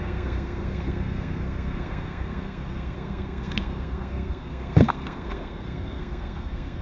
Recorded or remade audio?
remade